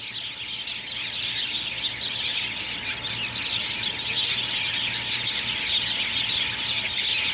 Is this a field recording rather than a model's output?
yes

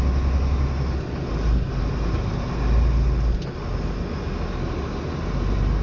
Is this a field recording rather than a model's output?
yes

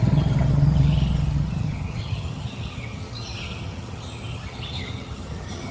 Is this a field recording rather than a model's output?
no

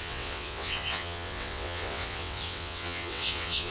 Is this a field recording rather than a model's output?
no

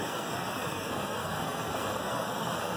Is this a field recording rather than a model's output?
no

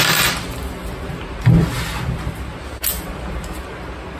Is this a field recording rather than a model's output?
yes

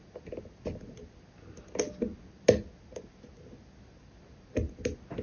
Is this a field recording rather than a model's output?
yes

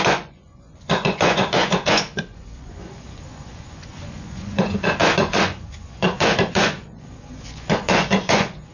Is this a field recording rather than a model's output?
no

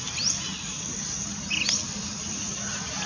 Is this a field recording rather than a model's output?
yes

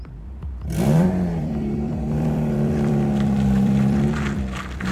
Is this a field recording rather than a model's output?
no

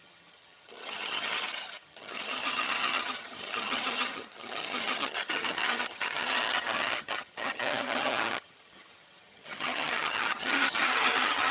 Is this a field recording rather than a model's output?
no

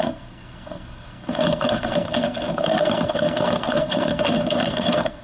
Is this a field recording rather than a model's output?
no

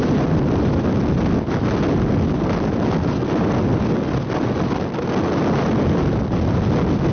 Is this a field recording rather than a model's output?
yes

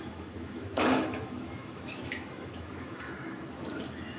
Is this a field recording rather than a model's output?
no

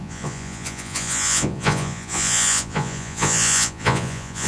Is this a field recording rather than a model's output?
no